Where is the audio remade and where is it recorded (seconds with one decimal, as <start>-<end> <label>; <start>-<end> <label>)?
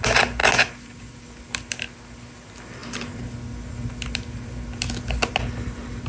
0.0-6.1 recorded